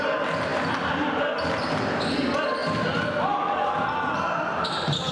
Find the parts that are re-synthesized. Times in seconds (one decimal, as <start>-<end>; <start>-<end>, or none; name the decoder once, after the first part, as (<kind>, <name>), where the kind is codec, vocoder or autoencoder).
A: none